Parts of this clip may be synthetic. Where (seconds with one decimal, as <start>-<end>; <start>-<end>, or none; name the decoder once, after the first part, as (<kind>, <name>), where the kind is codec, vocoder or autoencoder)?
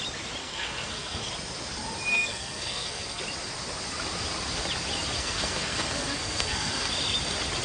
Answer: 0.4-1.3 (codec, SNAC); 2.1-3.2; 5.2-6.9